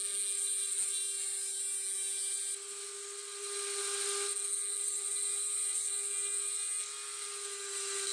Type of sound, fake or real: real